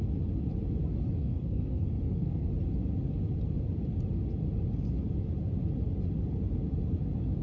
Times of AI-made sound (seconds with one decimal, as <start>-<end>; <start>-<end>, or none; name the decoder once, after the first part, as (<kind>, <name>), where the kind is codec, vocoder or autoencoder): 1.2-2.5 (codec, SNAC)